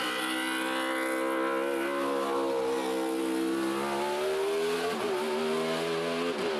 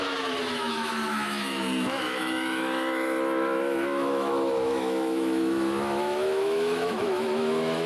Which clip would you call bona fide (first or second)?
first